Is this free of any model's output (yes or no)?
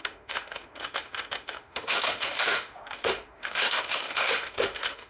no